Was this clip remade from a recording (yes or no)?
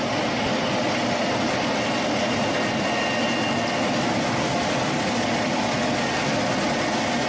no